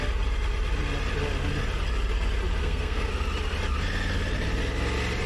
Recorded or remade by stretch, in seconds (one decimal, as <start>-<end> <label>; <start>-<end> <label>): 0.0-2.6 recorded; 2.6-3.1 remade; 3.1-5.3 recorded